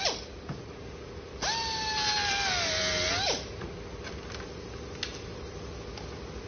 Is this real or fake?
real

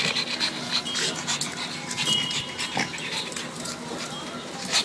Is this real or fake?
fake